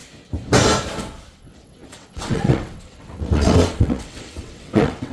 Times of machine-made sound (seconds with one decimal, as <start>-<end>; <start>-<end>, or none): 1.4-5.1